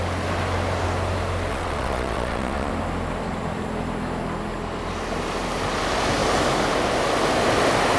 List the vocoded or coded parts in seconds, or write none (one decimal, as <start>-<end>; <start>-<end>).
1.5-2.7